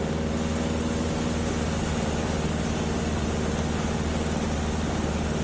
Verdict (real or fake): real